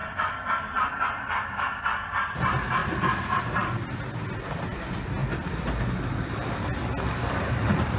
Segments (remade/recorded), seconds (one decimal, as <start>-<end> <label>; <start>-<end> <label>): 0.0-8.0 recorded